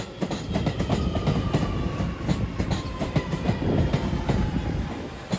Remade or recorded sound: recorded